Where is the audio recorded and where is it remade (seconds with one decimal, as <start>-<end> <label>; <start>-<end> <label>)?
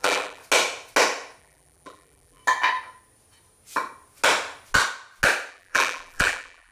0.0-0.4 remade; 0.4-1.4 recorded; 1.4-2.4 remade; 2.4-5.5 recorded; 5.5-6.7 remade